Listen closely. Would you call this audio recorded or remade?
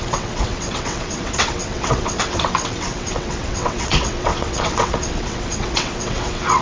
remade